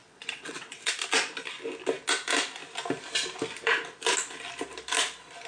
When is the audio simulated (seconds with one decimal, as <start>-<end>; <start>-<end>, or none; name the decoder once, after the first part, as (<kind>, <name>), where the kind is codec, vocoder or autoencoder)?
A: 0.0-0.9 (vocoder, WaveNeXt)